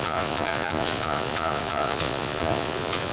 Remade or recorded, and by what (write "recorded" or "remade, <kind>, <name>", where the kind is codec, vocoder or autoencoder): remade, vocoder, Vocos